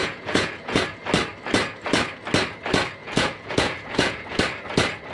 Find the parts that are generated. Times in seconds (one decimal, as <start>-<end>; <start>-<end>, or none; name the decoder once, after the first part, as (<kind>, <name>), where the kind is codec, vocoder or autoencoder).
0.0-0.8 (vocoder, Vocos); 3.0-4.4